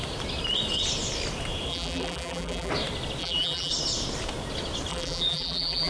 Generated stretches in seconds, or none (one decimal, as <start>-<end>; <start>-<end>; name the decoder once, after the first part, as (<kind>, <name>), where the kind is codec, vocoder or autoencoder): 1.7-2.7 (vocoder, BigVGAN v2); 3.2-3.7; 4.9-5.9